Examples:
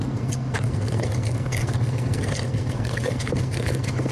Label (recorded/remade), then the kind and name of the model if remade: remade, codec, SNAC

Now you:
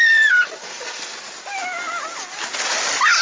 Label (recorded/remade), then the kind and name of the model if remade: recorded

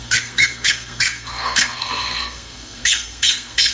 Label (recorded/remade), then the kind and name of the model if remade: remade, codec, SNAC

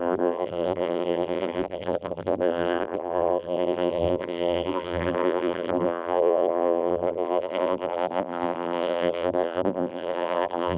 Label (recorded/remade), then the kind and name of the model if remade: remade, vocoder, BigVGAN v2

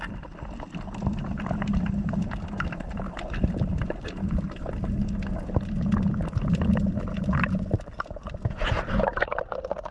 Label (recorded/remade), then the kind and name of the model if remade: recorded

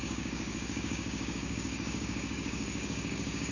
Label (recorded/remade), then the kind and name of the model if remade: remade, codec, DAC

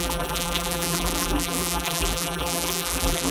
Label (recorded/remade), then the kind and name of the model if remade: remade, vocoder, BigVGAN v2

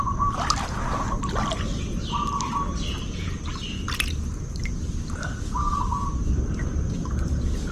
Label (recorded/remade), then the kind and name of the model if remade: recorded